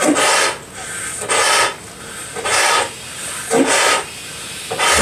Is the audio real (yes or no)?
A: yes